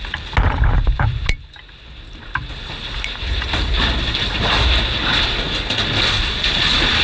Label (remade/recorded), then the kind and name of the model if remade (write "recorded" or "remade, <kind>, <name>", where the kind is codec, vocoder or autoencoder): recorded